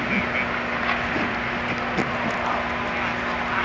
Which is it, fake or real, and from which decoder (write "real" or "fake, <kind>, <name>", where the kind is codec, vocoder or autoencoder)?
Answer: real